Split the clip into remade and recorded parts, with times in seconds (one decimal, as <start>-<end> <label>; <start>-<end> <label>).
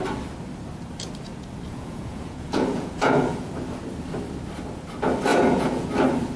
0.0-1.7 recorded; 1.7-3.5 remade; 3.5-5.3 recorded; 5.3-5.9 remade; 5.9-6.4 recorded